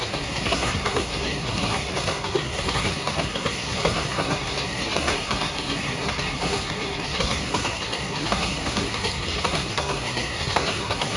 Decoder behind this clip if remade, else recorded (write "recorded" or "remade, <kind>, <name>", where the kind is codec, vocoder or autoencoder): remade, codec, SNAC